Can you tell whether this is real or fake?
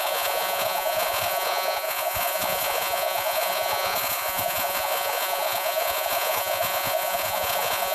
fake